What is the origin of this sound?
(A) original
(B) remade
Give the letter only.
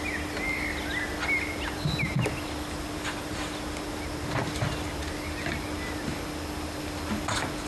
A